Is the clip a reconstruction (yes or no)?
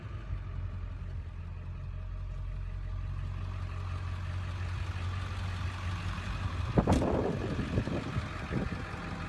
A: no